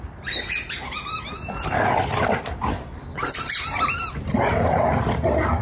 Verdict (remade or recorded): recorded